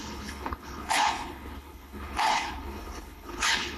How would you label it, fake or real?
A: fake